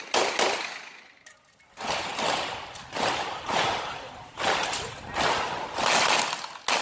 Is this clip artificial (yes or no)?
no